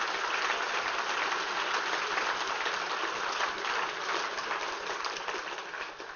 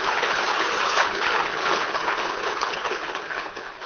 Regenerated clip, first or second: second